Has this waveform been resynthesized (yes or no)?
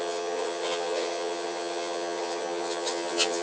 yes